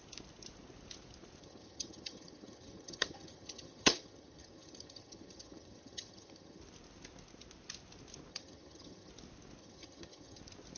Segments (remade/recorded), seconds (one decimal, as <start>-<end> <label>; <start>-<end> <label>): 0.0-1.4 recorded; 1.4-6.6 remade; 6.6-8.3 recorded; 8.3-9.1 remade; 9.1-9.6 recorded; 9.6-10.4 remade; 10.4-10.8 recorded